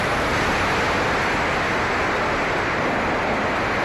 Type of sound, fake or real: real